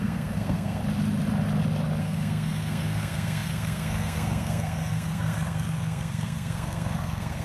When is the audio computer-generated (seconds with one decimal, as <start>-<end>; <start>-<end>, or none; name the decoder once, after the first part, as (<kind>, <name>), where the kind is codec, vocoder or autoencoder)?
0.0-0.8 (codec, SNAC); 2.0-7.4